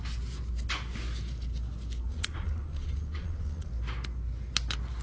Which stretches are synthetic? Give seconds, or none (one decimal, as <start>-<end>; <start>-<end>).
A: 2.1-3.7